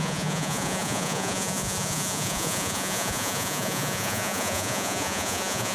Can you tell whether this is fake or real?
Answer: fake